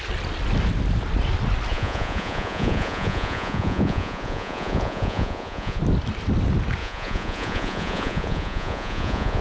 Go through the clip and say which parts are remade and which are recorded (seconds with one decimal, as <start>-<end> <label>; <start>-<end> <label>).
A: 0.0-1.7 recorded; 1.7-5.8 remade; 5.8-6.8 recorded; 6.8-9.4 remade